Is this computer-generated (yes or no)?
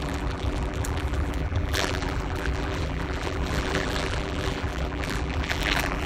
yes